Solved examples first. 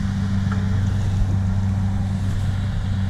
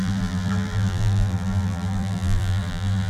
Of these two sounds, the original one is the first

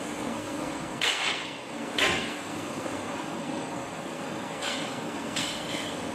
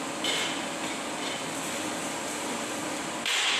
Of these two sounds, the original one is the second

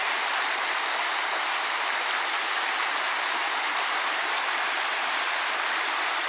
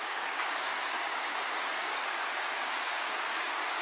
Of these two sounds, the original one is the first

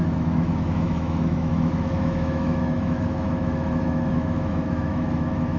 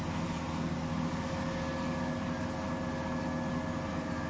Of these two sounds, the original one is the second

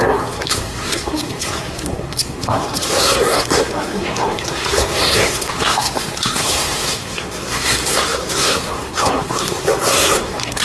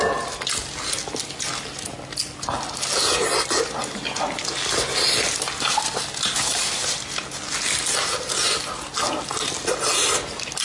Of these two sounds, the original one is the second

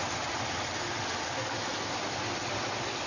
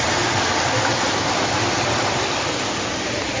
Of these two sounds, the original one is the first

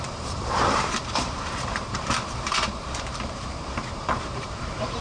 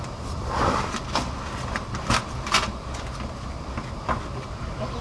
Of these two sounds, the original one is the second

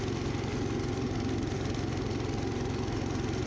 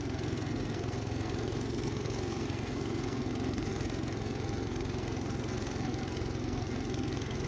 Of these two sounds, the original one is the first